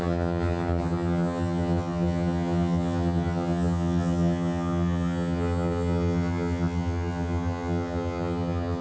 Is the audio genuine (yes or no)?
no